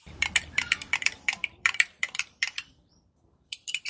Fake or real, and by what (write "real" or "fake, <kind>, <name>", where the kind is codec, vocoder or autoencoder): fake, vocoder, BigVGAN v2